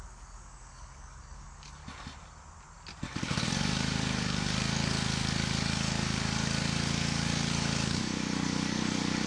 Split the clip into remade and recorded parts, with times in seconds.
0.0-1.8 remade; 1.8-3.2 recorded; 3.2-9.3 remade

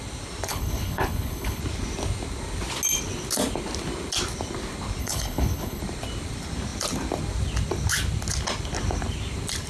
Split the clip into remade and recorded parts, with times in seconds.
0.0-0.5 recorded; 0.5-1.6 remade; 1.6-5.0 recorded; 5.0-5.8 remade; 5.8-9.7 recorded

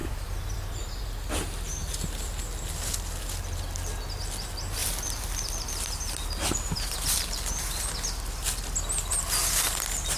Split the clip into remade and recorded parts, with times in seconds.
0.0-1.3 remade; 1.3-4.8 recorded; 4.8-7.9 remade; 7.9-10.2 recorded